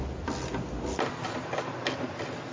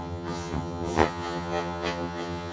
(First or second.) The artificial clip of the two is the second